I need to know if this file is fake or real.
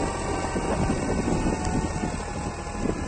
real